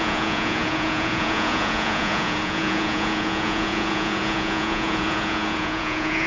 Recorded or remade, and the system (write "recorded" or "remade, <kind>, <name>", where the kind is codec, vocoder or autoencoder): remade, vocoder, Vocos